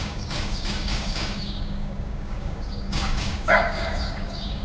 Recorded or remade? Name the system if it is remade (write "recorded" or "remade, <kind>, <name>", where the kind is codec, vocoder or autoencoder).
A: remade, codec, DAC